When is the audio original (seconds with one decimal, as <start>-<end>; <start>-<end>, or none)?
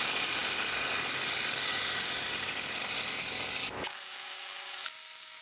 none